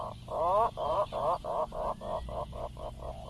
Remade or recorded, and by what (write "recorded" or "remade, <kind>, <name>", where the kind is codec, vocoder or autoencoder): remade, vocoder, Vocos